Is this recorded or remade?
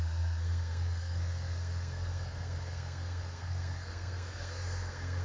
remade